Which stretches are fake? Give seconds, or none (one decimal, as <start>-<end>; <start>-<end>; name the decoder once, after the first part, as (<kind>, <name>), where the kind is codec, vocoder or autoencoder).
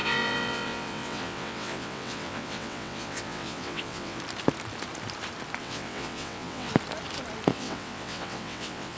0.0-4.2 (vocoder, WaveNeXt); 5.6-6.7; 7.5-9.0